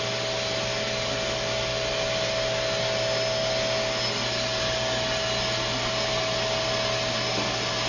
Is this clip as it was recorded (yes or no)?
yes